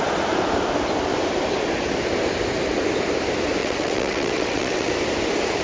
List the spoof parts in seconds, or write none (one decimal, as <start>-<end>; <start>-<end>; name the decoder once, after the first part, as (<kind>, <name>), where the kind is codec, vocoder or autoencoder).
3.6-4.9 (vocoder, WaveNeXt)